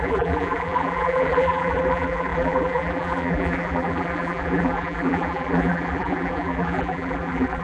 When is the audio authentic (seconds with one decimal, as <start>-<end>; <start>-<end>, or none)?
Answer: none